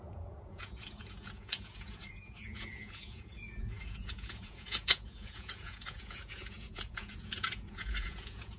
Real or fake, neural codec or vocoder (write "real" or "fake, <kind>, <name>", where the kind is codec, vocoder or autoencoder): fake, vocoder, Vocos